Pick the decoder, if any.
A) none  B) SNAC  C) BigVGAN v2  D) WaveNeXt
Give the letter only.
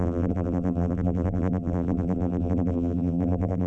C